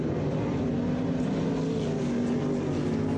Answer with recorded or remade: recorded